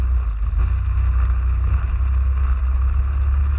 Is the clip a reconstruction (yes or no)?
no